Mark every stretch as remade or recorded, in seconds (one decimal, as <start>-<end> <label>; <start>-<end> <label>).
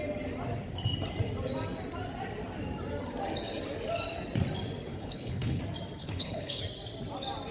0.0-4.9 recorded; 4.9-5.6 remade; 5.6-6.0 recorded; 6.0-6.6 remade; 6.6-7.5 recorded